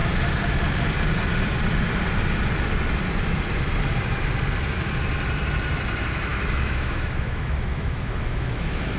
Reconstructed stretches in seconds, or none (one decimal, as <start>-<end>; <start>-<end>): 6.3-9.0